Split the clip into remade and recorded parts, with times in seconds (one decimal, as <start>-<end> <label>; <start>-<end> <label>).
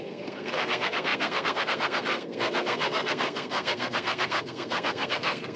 0.0-5.6 remade